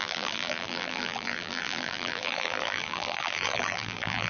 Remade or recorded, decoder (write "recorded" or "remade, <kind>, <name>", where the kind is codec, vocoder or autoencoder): remade, vocoder, BigVGAN v2